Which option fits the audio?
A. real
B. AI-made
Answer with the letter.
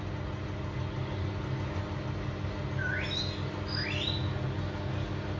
A